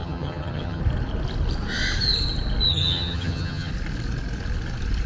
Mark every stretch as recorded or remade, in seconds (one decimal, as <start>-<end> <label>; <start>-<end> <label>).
0.0-0.8 remade; 0.8-2.7 recorded; 2.7-3.7 remade; 3.7-5.1 recorded